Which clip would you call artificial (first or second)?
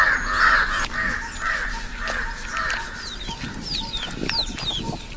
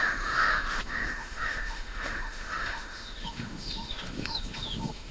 second